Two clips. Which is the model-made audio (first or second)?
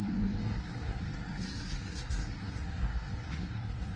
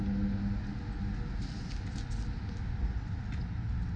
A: first